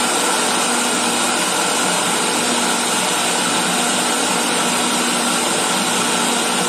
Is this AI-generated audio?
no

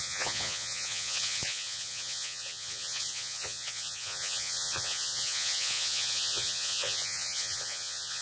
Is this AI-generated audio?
yes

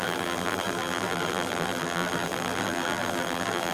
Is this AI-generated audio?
yes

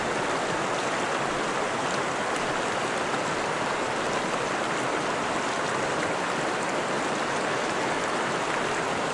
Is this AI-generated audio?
no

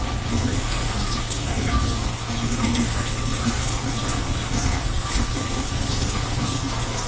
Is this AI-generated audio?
yes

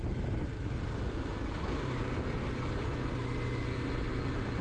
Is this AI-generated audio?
no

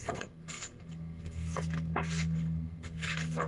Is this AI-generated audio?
yes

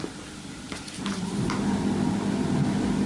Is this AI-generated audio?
no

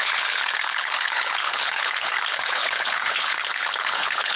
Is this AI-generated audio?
yes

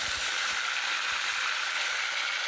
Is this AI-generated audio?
no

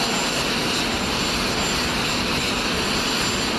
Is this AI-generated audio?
no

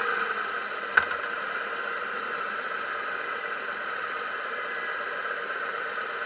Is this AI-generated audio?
no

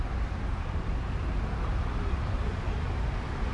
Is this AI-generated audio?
no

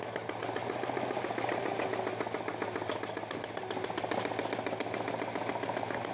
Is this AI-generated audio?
no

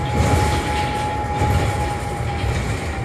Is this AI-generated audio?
no